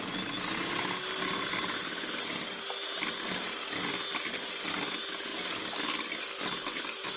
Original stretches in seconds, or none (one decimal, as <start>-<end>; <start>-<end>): 0.0-7.2

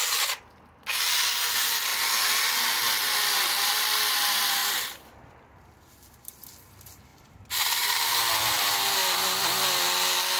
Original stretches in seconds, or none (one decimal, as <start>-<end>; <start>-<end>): 0.0-4.6; 5.3-7.1; 8.3-10.4

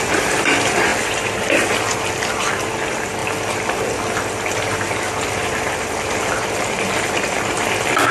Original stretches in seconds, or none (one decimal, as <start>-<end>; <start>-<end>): 0.0-0.9; 2.1-3.2

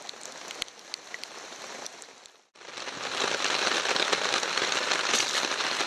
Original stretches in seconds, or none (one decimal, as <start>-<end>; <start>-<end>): 0.0-5.9

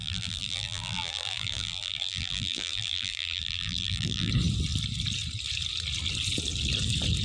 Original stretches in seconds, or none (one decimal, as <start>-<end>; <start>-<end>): 4.3-7.2

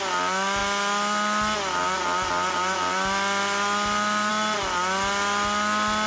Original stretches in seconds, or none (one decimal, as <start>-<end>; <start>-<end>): 0.0-6.1